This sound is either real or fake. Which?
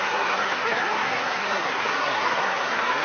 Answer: fake